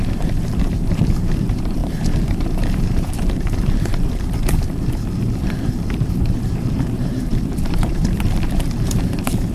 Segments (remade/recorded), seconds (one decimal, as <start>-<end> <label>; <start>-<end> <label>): 0.0-9.5 remade